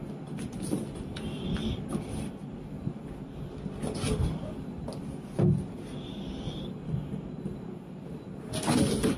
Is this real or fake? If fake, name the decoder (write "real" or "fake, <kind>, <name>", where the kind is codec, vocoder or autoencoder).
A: real